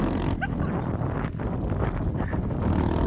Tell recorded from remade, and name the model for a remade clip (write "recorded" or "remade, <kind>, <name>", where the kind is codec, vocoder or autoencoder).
recorded